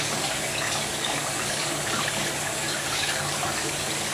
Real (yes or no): no